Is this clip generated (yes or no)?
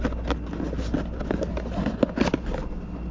no